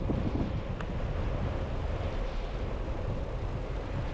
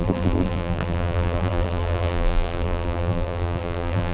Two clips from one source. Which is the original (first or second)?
first